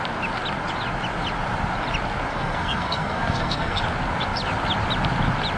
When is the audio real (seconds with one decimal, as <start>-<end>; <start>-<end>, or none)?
0.0-2.3; 3.8-5.6